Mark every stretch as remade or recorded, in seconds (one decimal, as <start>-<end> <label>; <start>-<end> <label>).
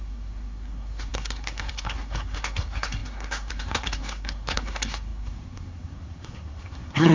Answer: 0.0-7.1 remade